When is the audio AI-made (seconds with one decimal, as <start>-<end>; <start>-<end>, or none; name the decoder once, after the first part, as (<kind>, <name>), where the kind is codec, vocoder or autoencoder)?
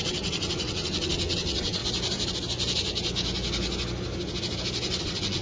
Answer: 0.0-1.8 (vocoder, WaveNeXt); 5.0-5.4